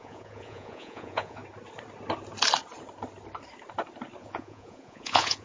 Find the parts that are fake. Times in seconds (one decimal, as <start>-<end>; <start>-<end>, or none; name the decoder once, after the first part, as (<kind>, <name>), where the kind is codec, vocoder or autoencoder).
0.0-1.4 (vocoder, Vocos); 4.2-5.4

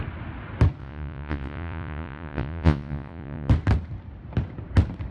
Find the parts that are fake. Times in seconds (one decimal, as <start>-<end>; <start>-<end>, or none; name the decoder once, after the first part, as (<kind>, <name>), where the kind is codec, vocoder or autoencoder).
0.8-3.5 (vocoder, Vocos)

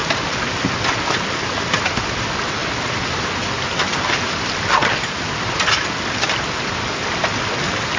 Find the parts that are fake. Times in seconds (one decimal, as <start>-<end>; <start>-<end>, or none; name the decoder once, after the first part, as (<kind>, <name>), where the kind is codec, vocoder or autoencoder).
none